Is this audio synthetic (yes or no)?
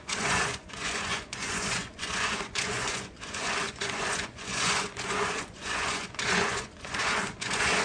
yes